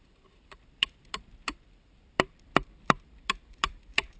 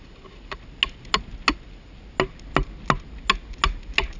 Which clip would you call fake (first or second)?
first